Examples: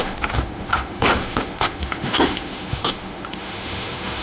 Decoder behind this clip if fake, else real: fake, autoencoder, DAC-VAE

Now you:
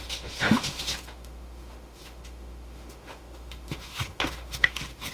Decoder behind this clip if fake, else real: fake, autoencoder, DAC-VAE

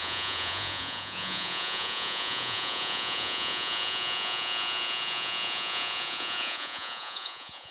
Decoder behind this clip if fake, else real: fake, vocoder, Vocos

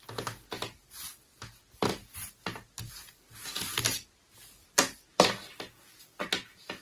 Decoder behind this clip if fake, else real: real